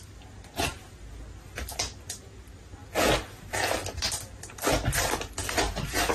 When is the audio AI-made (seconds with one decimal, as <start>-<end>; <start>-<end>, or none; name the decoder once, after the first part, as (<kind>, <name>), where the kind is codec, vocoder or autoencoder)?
none